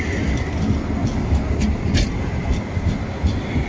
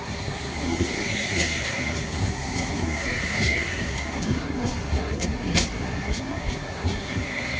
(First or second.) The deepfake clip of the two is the second